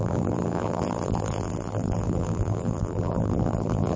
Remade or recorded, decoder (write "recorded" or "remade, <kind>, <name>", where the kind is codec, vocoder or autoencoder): remade, vocoder, BigVGAN v2